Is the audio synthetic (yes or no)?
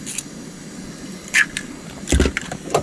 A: no